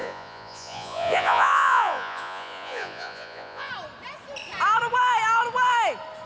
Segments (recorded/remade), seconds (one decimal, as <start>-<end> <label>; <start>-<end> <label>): 0.0-3.7 remade; 3.7-6.3 recorded